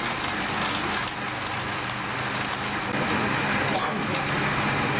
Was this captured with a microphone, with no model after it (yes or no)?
yes